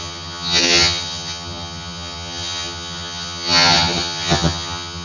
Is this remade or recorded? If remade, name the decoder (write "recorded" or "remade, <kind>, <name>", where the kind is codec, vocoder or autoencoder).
remade, vocoder, HiFi-GAN